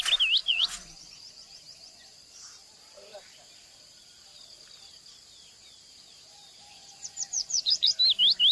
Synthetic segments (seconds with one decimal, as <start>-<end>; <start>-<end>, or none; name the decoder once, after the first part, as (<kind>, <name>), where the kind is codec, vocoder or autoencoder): 0.4-2.3 (vocoder, Vocos); 6.6-7.9